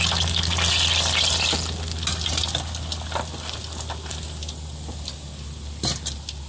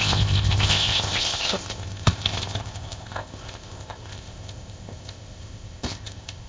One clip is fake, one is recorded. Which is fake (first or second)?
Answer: second